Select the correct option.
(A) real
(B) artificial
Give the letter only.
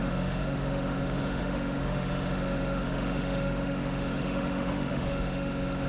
B